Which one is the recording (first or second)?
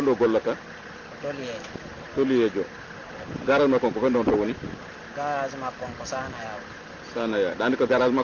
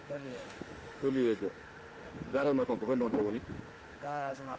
first